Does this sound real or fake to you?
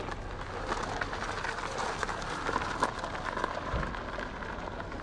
real